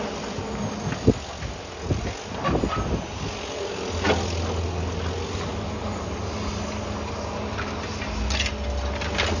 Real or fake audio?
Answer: real